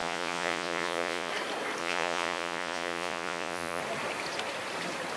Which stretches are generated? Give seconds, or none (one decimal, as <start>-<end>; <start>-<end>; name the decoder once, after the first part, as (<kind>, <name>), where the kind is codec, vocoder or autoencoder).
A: 0.0-1.3 (vocoder, Vocos); 1.8-3.8